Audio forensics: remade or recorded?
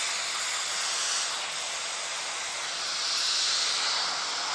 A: recorded